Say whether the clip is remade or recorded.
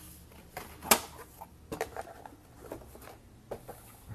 recorded